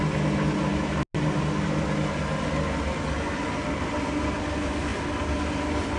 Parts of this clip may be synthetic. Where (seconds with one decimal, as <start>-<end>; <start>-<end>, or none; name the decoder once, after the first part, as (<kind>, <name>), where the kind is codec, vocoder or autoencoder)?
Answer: none